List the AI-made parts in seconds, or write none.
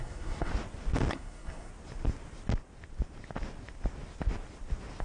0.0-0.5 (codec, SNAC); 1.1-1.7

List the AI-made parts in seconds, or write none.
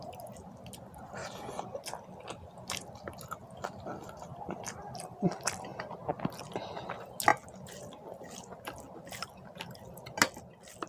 none